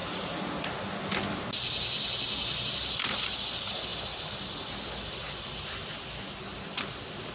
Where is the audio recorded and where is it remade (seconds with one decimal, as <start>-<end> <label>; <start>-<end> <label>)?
0.0-0.5 remade; 0.5-7.3 recorded